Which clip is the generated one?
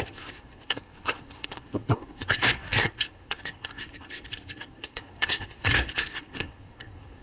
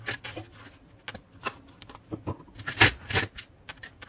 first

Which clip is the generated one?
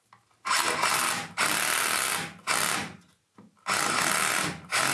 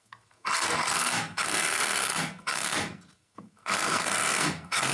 second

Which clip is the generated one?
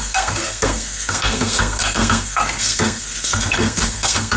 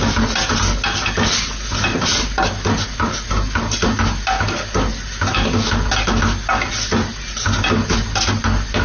first